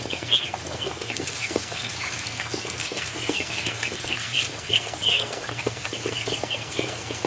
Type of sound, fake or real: fake